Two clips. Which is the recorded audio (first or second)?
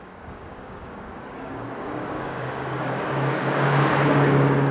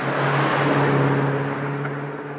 second